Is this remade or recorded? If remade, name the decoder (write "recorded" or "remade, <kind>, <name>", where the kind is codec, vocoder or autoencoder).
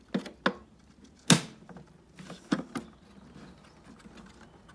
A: recorded